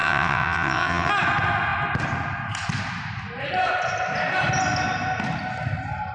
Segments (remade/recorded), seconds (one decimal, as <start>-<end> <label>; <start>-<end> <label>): 0.0-1.1 remade; 1.1-6.1 recorded